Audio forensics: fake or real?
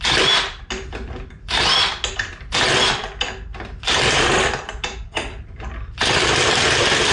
real